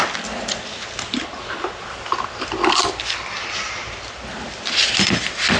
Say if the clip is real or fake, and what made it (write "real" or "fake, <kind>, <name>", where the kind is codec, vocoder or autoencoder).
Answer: real